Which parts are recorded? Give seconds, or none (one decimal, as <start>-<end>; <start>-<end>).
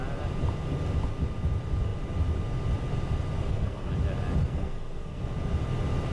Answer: 0.0-3.4; 3.9-4.4; 5.2-6.1